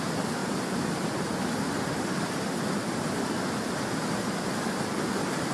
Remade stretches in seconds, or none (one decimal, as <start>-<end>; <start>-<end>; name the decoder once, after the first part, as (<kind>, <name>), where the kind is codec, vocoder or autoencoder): 0.4-1.3 (vocoder, BigVGAN v2)